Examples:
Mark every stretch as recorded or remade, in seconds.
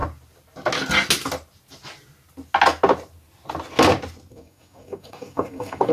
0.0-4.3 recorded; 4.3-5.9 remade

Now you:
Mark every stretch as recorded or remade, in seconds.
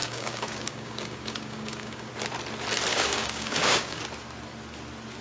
0.0-2.1 remade; 2.1-2.9 recorded; 2.9-4.0 remade; 4.0-5.2 recorded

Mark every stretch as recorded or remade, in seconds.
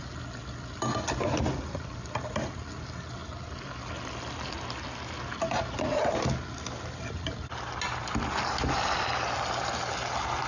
0.0-10.5 recorded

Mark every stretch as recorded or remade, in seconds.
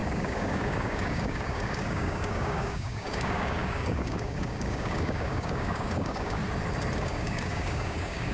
0.0-6.4 remade; 6.4-7.0 recorded; 7.0-8.3 remade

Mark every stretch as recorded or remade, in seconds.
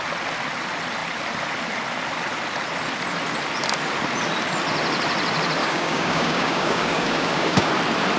0.0-5.6 recorded; 5.6-7.7 remade; 7.7-8.2 recorded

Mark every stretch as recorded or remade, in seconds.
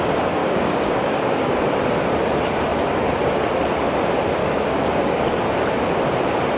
0.0-0.4 recorded; 0.4-1.5 remade; 1.5-4.4 recorded; 4.4-5.2 remade; 5.2-6.6 recorded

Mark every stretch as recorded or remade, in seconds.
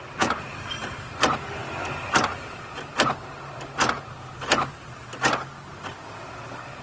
0.0-6.8 recorded